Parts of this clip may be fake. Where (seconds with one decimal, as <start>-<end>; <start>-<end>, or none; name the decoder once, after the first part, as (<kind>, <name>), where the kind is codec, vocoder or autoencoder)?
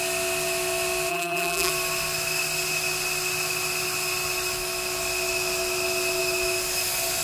1.1-1.7 (vocoder, BigVGAN v2)